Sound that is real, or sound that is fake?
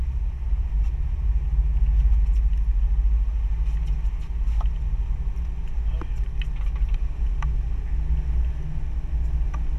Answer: real